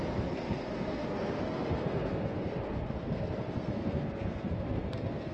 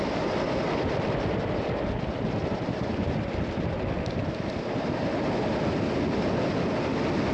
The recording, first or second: second